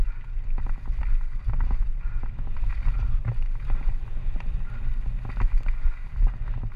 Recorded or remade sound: recorded